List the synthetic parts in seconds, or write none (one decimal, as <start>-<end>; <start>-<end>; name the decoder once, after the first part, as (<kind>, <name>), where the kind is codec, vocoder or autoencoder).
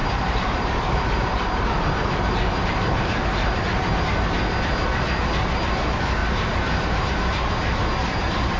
0.0-4.0 (vocoder, BigVGAN v2); 6.2-7.1